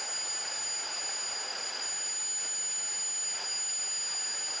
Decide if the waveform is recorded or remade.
recorded